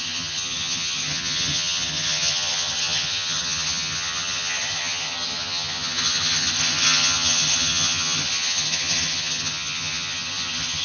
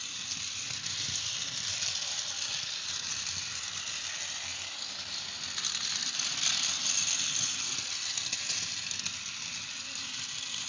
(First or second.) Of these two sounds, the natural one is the second